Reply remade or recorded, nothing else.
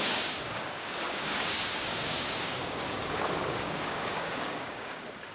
remade